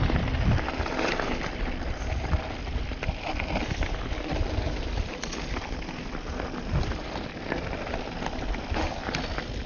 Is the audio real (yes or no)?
yes